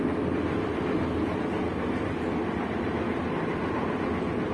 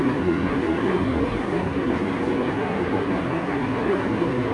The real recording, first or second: first